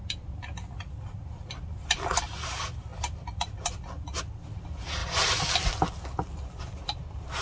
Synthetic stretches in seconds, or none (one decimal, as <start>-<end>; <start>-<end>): none